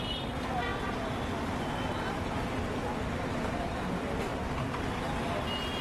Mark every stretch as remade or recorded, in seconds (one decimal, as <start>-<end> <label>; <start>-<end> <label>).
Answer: 0.0-4.3 remade; 4.3-5.2 recorded; 5.2-5.8 remade